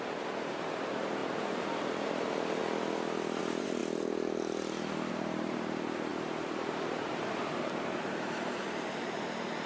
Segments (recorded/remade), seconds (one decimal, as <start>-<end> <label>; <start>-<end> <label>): 0.0-2.6 remade; 2.6-3.4 recorded; 3.4-3.8 remade; 3.8-5.1 recorded; 5.1-9.7 remade